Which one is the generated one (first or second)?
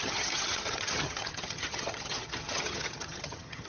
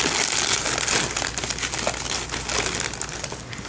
first